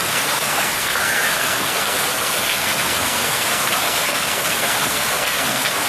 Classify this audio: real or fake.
fake